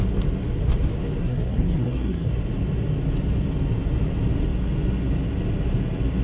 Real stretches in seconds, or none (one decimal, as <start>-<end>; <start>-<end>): 0.0-1.2; 2.3-6.2